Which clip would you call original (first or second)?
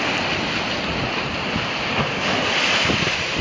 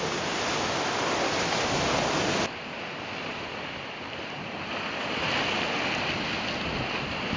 second